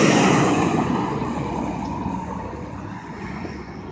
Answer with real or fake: fake